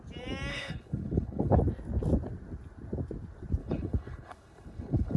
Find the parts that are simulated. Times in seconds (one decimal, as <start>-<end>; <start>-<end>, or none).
0.5-1.6; 3.6-5.2